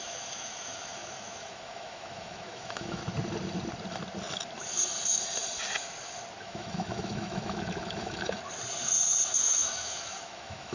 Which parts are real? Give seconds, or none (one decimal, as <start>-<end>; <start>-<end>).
3.0-6.4; 8.4-9.3